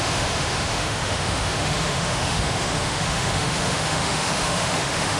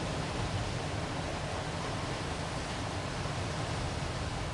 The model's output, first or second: first